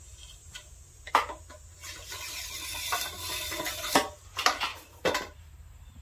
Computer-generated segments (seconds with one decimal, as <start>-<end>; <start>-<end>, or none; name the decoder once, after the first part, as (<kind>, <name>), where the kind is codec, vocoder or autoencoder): 0.4-1.1 (vocoder, BigVGAN v2); 4.7-5.4